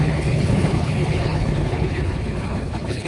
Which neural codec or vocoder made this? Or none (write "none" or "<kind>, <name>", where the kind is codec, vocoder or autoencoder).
codec, HILCodec